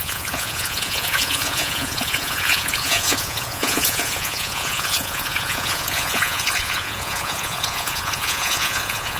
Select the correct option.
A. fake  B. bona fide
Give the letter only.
A